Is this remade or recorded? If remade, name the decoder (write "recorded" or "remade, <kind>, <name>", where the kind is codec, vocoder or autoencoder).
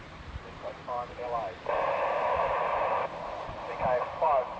remade, vocoder, BigVGAN v2